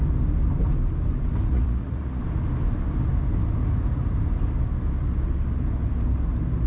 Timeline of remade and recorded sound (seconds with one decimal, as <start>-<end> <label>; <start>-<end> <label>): 0.0-1.5 recorded; 1.5-2.2 remade; 2.2-6.7 recorded